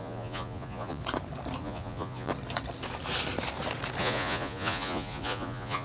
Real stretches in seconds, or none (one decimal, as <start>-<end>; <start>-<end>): 1.0-1.6; 2.3-4.0